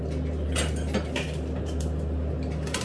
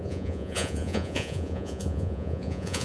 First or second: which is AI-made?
second